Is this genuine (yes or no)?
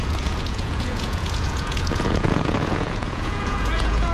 no